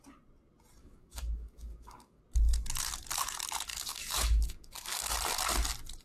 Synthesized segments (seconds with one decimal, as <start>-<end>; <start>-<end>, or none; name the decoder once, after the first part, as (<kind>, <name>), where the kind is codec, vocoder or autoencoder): 0.8-2.2 (codec, DAC); 3.7-5.2